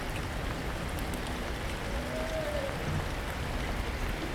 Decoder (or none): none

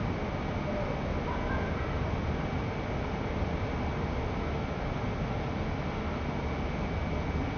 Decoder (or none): none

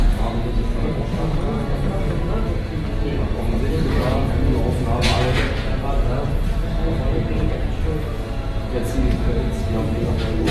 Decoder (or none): none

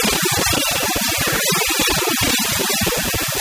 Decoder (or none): none